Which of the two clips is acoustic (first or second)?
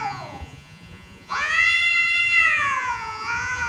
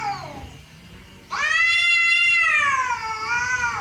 second